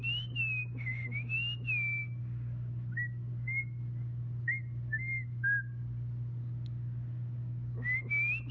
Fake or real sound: real